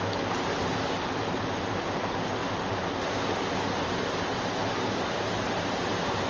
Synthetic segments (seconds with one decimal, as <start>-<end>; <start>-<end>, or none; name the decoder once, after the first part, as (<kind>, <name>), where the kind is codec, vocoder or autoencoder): none